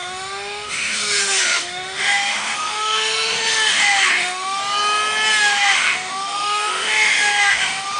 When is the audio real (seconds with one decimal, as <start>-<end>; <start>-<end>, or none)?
4.6-5.4